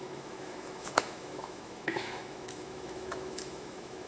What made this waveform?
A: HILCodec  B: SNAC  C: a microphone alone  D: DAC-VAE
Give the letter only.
D